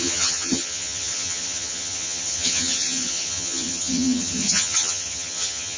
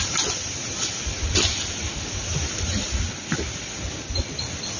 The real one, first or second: second